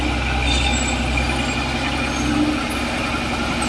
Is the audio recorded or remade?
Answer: recorded